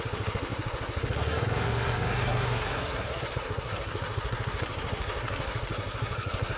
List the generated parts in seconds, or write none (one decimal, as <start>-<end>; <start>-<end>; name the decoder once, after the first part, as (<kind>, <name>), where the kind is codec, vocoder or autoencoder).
0.0-6.6 (codec, SNAC)